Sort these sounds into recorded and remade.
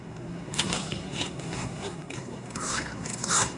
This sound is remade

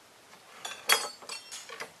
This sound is recorded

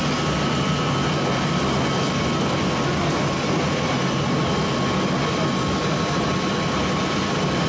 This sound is recorded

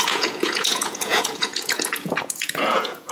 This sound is remade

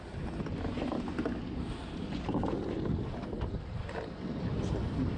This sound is recorded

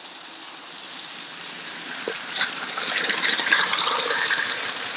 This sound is remade